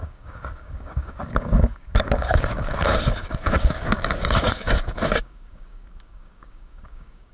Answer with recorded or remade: remade